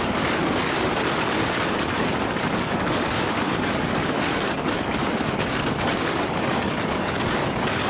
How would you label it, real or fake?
fake